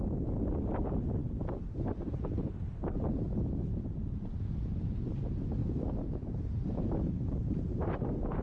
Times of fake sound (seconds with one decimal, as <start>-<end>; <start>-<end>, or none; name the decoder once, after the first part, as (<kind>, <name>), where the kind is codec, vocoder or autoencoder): 5.6-8.4 (vocoder, BigVGAN v2)